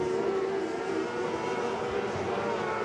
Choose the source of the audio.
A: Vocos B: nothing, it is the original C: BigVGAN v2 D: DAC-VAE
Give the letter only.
B